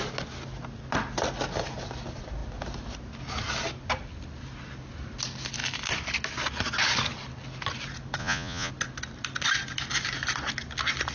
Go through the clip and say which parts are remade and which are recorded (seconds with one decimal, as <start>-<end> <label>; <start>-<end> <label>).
0.0-8.2 recorded; 8.2-8.7 remade; 8.7-11.1 recorded